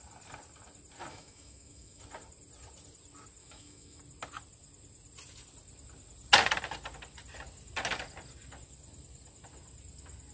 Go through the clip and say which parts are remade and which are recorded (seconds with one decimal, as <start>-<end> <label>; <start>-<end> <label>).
0.0-1.1 recorded; 1.1-2.0 remade; 2.0-3.4 recorded; 3.4-4.0 remade; 4.0-10.3 recorded